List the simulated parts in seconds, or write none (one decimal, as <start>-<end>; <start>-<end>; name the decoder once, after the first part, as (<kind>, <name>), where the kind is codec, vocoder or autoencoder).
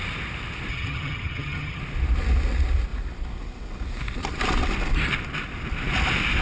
0.7-1.8 (vocoder, HiFi-GAN)